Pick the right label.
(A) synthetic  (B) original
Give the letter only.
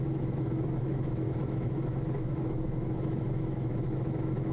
A